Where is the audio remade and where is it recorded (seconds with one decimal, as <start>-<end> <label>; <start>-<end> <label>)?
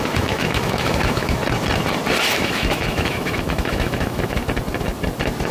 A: 0.0-1.4 remade; 1.4-2.3 recorded; 2.3-4.4 remade; 4.4-5.5 recorded